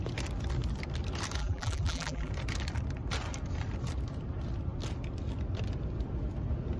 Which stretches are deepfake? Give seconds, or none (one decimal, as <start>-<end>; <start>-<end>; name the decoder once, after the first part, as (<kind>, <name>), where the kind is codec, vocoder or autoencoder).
1.4-2.3 (vocoder, BigVGAN v2)